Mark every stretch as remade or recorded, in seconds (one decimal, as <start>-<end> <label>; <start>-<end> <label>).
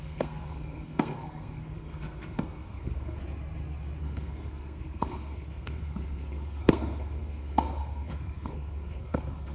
0.0-3.2 remade; 3.2-4.0 recorded; 4.0-9.5 remade